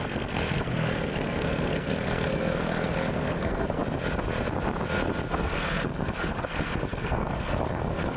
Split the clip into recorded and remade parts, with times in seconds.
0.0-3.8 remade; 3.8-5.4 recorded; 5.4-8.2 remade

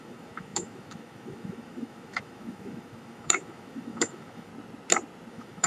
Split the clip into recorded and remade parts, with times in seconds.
0.0-4.5 remade; 4.5-5.3 recorded; 5.3-5.7 remade